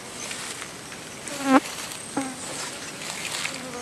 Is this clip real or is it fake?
real